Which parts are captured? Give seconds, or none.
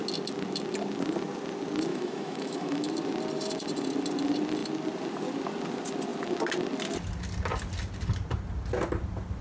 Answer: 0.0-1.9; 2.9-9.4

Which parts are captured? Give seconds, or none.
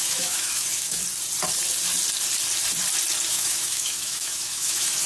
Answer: 1.0-3.3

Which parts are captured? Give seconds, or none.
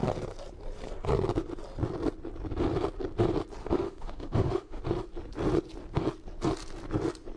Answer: 0.0-3.6; 4.8-7.4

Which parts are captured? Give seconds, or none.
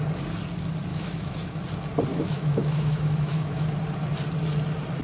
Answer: 0.0-0.9; 1.6-2.1; 3.7-5.0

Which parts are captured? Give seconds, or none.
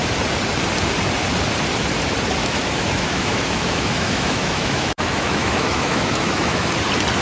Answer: 0.0-2.4; 6.7-7.2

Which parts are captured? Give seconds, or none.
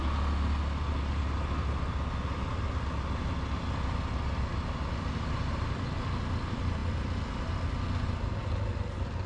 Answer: 0.0-9.3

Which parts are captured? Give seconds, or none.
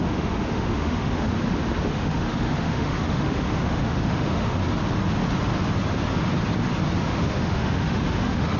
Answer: 1.3-1.9; 4.6-7.0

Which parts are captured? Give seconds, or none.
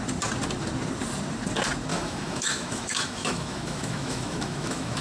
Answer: 0.0-1.9